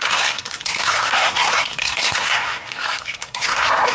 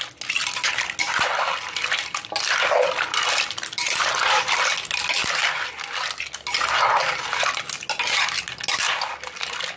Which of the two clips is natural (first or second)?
second